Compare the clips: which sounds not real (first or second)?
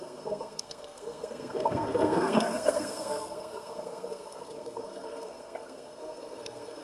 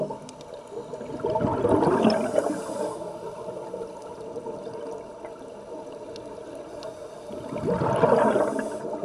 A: first